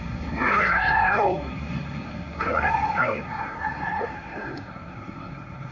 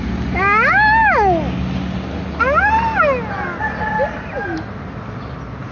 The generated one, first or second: first